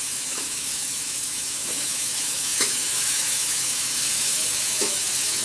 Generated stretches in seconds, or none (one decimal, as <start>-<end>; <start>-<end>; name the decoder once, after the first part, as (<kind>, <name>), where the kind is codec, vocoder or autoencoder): 0.0-5.4 (autoencoder, DAC-VAE)